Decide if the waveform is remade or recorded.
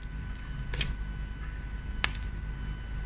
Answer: recorded